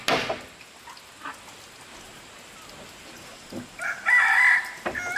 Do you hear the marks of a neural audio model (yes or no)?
no